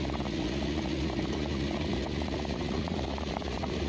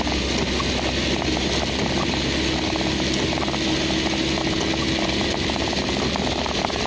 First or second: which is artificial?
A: first